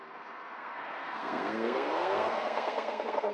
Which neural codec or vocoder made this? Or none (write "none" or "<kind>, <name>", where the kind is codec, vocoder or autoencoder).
codec, SNAC